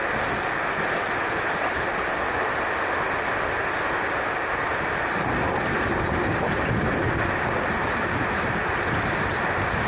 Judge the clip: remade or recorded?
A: recorded